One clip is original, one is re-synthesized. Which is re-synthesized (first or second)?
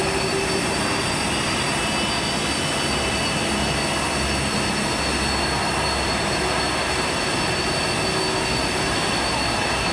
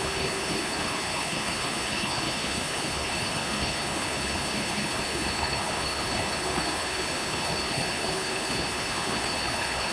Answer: second